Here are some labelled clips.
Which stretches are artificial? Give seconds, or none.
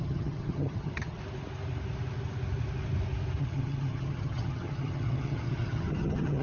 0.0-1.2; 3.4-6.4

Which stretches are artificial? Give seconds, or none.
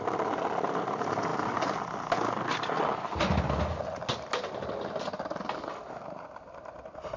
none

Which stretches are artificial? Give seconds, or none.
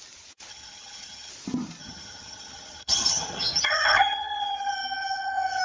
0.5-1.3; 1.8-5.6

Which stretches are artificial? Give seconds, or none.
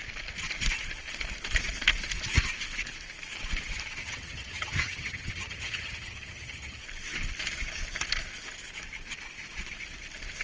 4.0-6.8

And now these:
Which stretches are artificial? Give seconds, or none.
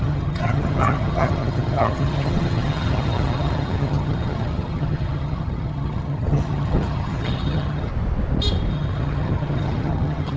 0.0-7.9; 8.7-10.4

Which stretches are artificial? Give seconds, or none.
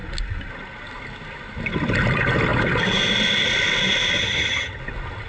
4.2-4.8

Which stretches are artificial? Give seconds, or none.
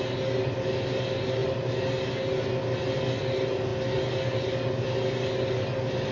none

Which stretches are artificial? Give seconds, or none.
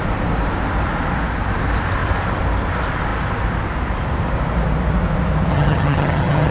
5.5-6.5